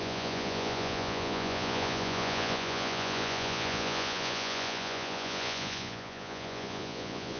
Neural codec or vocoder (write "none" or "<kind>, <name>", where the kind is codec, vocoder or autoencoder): vocoder, Vocos